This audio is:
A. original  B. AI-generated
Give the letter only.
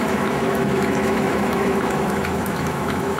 B